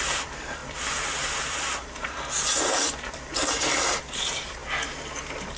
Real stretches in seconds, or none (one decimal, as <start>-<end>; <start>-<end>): 4.6-5.6